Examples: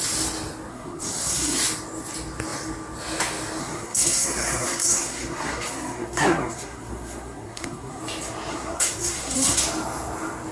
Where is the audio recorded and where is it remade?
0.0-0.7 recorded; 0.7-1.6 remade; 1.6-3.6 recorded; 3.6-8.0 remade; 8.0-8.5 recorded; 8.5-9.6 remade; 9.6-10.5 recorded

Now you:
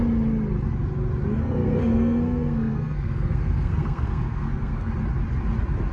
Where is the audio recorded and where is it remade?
0.0-1.4 recorded; 1.4-4.9 remade; 4.9-5.9 recorded

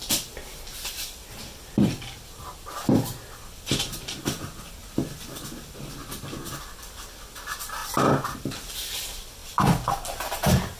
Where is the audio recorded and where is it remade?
0.0-10.8 recorded

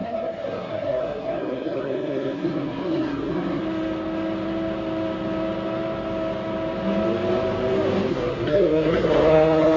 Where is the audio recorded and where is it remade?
0.0-3.6 remade; 3.6-8.1 recorded; 8.1-9.8 remade